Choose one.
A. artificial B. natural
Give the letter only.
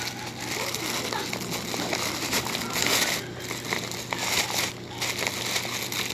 B